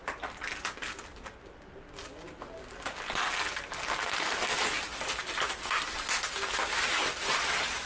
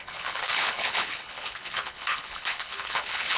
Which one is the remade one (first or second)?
second